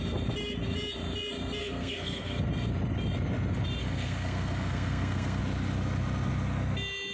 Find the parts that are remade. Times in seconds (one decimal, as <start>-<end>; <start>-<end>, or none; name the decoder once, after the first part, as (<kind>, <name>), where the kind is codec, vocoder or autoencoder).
1.6-2.4 (codec, SNAC); 3.8-5.4